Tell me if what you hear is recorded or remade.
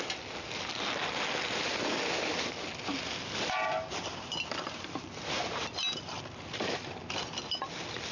recorded